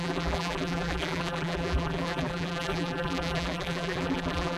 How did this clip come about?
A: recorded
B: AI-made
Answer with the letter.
B